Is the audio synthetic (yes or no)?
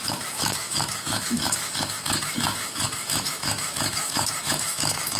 yes